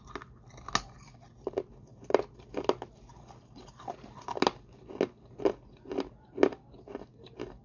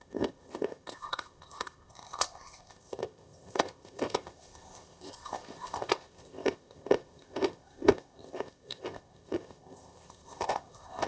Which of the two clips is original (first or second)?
first